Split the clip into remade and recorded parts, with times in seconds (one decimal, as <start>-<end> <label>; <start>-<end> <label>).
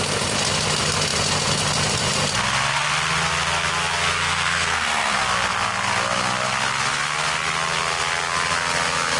0.0-4.2 recorded; 4.2-5.2 remade; 5.2-9.2 recorded